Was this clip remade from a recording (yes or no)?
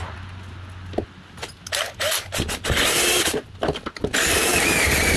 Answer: no